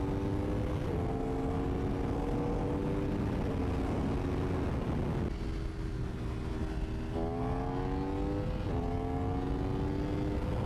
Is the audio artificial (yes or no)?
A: no